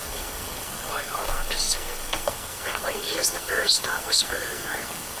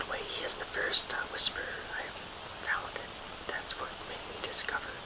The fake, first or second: first